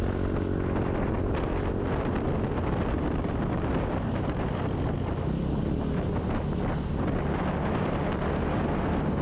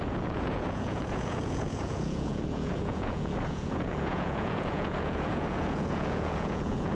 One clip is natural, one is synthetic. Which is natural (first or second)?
first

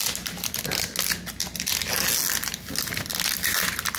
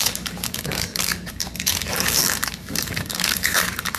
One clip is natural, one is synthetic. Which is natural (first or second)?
first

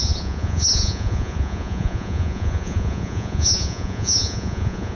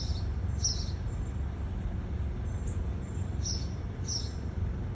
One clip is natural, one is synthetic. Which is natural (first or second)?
second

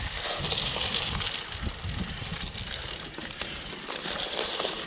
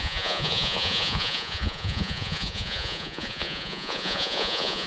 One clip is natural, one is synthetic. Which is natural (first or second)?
first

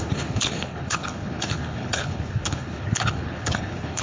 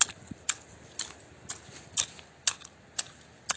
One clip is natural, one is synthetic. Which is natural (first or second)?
second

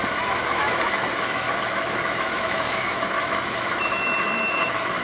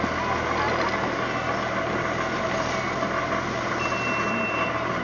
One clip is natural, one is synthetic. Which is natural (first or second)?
second